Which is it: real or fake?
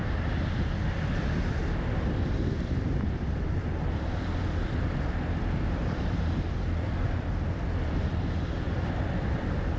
fake